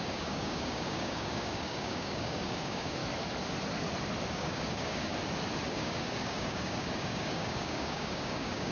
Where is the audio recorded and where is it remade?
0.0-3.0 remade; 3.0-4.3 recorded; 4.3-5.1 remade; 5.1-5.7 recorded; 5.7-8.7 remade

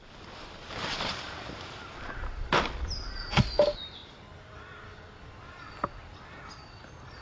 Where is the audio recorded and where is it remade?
0.0-7.2 recorded